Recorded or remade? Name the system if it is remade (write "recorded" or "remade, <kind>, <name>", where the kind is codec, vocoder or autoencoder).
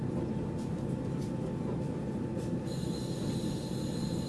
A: recorded